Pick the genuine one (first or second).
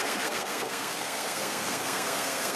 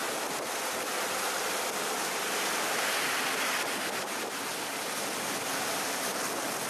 second